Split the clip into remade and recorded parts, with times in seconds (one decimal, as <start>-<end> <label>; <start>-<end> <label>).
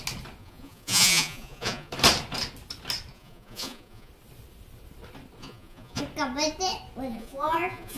0.0-0.4 recorded; 0.4-1.9 remade; 1.9-3.1 recorded; 3.1-4.1 remade; 4.1-5.4 recorded; 5.4-6.0 remade; 6.0-7.1 recorded; 7.1-8.0 remade